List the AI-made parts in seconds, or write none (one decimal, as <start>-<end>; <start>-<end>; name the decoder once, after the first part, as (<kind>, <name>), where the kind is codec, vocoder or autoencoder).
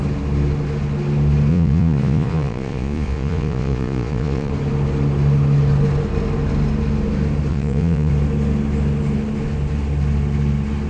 1.5-4.5 (vocoder, Vocos); 7.5-8.1